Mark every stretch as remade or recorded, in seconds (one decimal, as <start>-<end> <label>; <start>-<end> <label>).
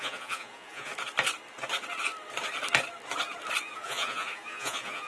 0.0-0.9 remade; 0.9-3.6 recorded; 3.6-5.1 remade